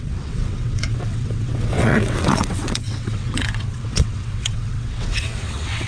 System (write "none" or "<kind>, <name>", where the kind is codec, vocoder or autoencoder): vocoder, WaveNeXt